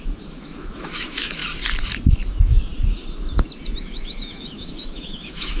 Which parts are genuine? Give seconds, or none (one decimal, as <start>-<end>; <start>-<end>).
1.4-2.3; 2.7-3.8